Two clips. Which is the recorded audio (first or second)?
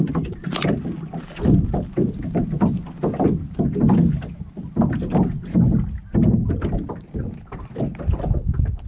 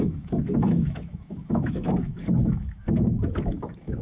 first